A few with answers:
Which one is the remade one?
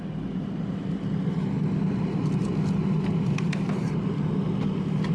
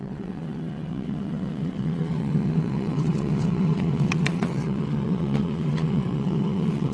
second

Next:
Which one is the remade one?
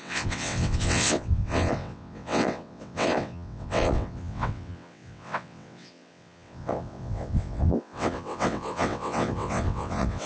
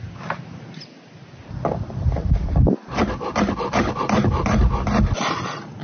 first